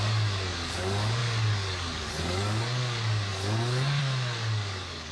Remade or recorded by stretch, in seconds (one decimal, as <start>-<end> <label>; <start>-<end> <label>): 0.0-5.1 remade